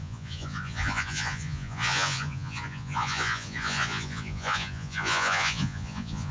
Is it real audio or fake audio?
fake